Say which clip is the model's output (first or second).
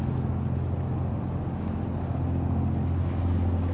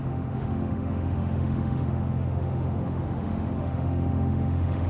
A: second